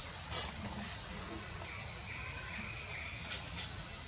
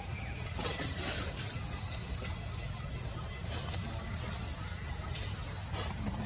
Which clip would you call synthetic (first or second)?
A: first